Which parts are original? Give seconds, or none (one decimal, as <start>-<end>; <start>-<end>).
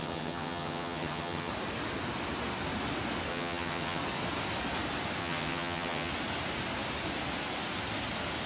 1.5-3.3; 4.0-5.2; 6.1-8.5